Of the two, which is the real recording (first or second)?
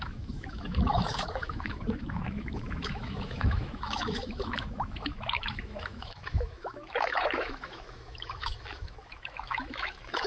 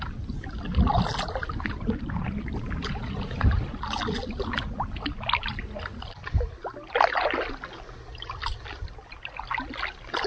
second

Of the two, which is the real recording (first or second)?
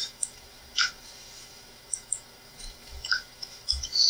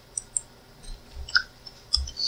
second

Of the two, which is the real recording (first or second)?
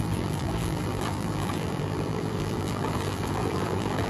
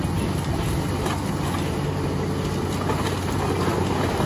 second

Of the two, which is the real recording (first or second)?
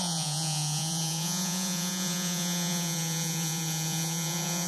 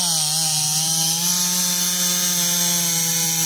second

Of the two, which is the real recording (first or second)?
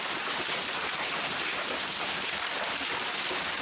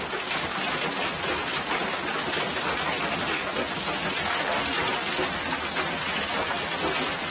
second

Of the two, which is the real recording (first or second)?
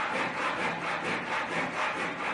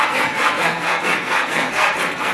first